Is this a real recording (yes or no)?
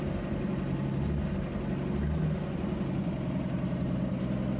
yes